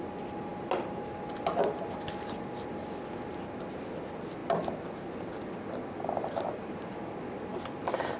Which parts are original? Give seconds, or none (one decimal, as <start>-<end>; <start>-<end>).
0.0-8.2